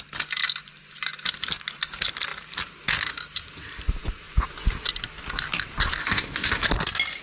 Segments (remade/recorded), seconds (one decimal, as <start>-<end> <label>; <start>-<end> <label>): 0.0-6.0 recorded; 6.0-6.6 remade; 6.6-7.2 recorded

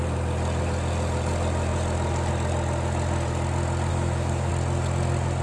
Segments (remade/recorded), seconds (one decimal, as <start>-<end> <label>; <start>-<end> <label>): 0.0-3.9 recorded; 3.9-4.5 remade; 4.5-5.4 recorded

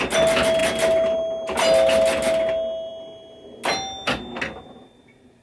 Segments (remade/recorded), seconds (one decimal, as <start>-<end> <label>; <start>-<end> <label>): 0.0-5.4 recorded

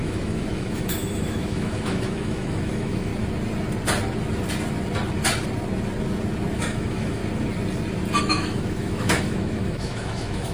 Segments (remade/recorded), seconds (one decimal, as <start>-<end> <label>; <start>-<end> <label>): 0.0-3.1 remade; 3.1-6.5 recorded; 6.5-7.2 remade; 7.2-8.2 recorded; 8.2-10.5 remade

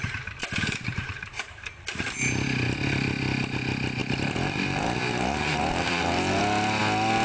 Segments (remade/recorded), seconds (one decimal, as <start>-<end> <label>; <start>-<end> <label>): 0.0-0.4 recorded; 0.4-1.8 remade; 1.8-4.0 recorded; 4.0-6.4 remade; 6.4-7.2 recorded

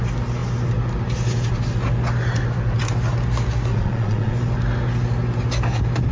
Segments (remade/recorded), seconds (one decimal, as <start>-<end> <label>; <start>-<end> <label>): 0.0-3.7 recorded; 3.7-4.3 remade; 4.3-6.1 recorded

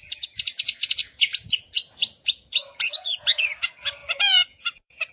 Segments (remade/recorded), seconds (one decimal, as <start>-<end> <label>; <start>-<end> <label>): 0.0-5.1 remade